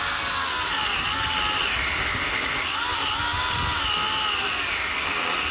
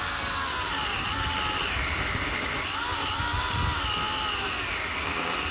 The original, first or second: first